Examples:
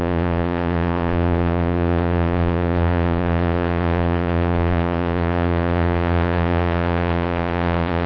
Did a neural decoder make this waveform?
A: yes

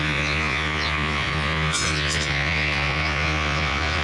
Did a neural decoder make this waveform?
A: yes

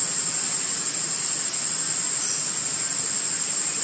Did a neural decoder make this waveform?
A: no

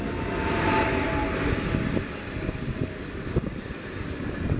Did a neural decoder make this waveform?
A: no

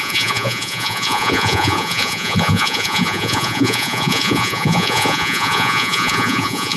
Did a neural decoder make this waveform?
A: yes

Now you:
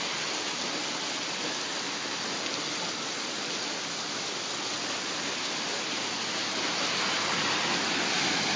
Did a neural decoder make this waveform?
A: no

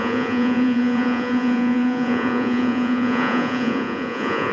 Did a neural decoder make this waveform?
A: yes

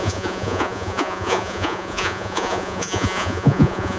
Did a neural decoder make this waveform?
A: yes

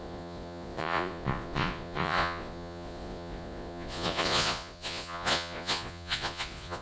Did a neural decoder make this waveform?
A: yes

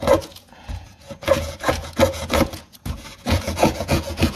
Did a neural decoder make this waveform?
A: yes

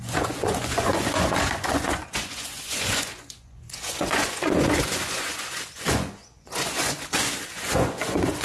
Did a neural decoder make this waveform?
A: yes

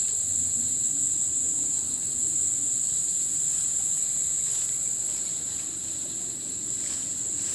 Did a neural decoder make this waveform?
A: no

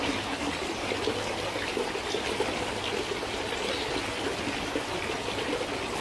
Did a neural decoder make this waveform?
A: no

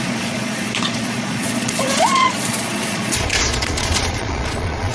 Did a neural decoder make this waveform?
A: yes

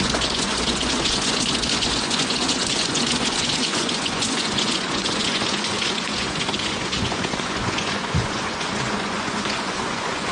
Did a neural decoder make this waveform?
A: yes